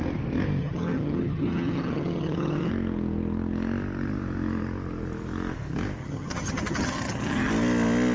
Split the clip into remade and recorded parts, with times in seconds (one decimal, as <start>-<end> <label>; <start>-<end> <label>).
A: 0.0-0.6 recorded; 0.6-2.7 remade; 2.7-6.0 recorded; 6.0-7.5 remade; 7.5-8.1 recorded